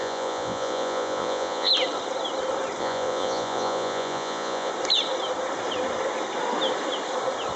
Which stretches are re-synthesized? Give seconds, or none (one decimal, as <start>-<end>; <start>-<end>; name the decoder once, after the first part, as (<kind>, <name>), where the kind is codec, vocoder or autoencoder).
0.0-1.7 (vocoder, Vocos); 2.8-4.7